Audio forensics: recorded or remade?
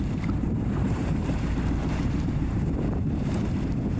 remade